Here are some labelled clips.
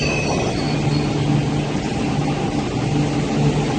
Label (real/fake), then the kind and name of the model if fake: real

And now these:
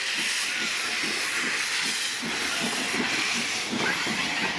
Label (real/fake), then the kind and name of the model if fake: real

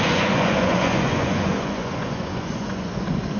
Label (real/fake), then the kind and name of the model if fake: fake, vocoder, Vocos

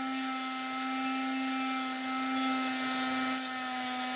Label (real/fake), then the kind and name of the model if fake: real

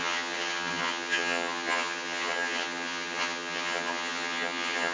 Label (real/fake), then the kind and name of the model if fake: fake, vocoder, HiFi-GAN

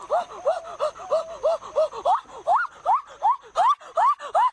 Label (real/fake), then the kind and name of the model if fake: real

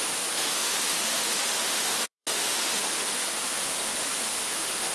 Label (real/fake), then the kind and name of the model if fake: fake, autoencoder, DAC-VAE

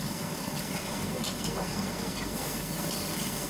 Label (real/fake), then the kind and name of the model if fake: fake, codec, SNAC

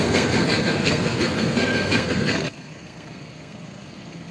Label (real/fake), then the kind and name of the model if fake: fake, codec, SNAC